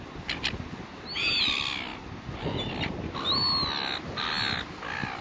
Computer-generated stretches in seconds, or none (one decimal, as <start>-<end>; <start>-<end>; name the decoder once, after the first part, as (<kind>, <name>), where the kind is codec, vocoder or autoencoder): none